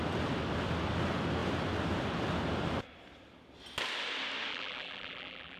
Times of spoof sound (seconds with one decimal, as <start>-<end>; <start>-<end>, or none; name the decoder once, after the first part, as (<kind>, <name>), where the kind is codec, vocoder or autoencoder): 4.5-5.6 (vocoder, BigVGAN v2)